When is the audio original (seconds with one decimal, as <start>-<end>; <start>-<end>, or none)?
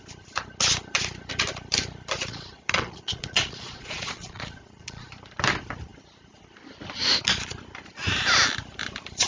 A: 0.0-2.3; 5.1-9.3